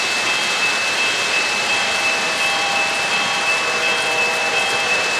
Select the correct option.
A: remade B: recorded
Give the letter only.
A